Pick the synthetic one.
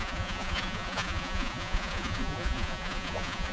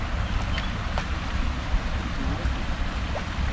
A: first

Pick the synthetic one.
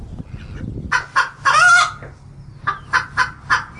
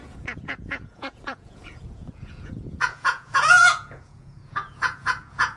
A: second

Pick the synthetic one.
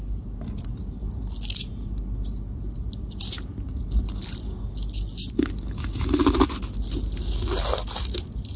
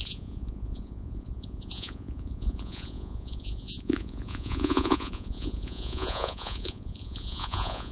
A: second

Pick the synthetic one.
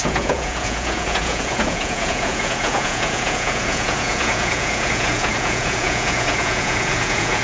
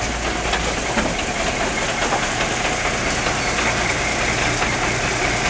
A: first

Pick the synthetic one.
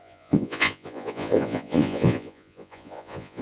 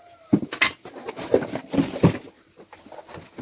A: first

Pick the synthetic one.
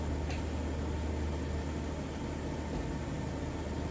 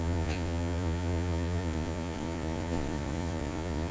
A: second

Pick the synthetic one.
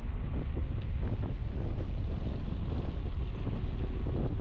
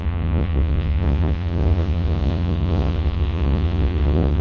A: second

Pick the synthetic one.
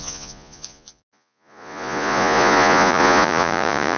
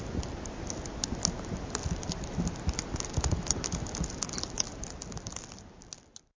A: first